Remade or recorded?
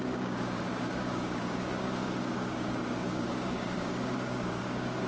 remade